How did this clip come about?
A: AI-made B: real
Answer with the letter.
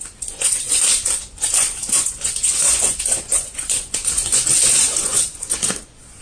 A